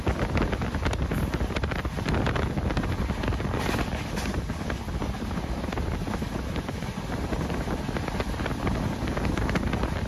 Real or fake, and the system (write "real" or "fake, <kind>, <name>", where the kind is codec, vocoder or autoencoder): real